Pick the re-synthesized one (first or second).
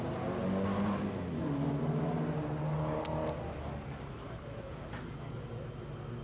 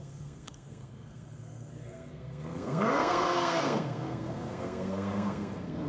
second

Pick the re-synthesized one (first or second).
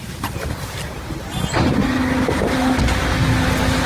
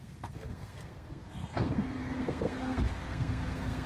second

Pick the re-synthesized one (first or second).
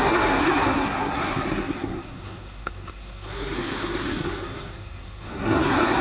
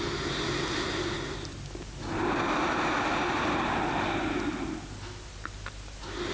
first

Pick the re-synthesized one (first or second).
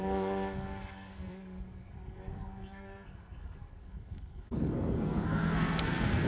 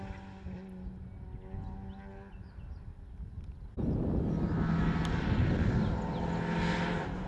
first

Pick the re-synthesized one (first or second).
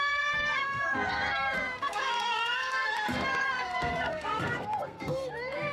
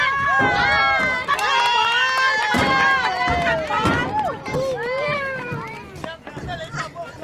first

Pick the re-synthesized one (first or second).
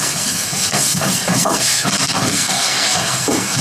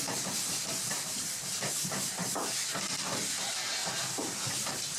first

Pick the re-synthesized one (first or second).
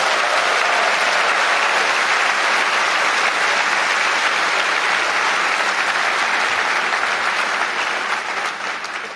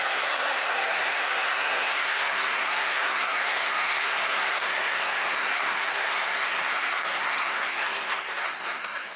second